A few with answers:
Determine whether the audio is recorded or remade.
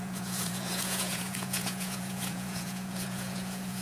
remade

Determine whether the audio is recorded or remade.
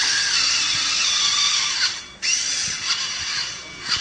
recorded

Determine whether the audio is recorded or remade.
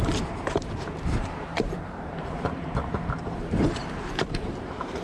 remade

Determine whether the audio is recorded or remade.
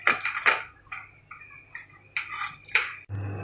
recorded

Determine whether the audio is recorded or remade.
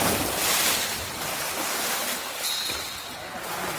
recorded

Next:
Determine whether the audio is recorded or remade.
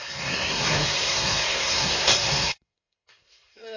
remade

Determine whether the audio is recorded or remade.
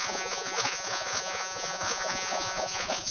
remade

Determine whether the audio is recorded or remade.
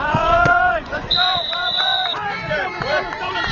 remade